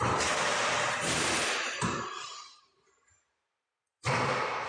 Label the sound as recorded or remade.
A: remade